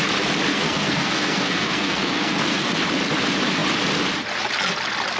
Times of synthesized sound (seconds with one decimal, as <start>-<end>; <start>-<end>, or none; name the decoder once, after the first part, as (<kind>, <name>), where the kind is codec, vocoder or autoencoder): 0.5-2.7 (codec, SNAC)